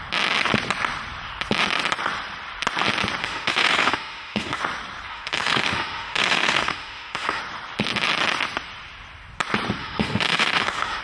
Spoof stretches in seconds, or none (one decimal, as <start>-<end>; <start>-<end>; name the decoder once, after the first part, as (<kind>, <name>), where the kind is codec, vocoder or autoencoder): 3.2-4.6 (autoencoder, DAC-VAE); 5.1-7.4; 9.8-11.0